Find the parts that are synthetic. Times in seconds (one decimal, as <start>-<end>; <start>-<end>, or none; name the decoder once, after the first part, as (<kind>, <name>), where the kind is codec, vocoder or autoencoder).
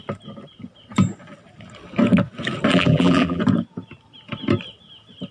2.7-3.4 (vocoder, BigVGAN v2)